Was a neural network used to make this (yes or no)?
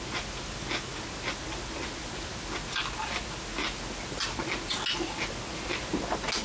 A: no